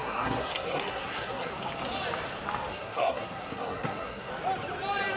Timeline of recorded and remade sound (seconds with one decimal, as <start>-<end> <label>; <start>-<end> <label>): 0.0-1.5 remade; 1.5-2.7 recorded; 2.7-4.3 remade; 4.3-5.2 recorded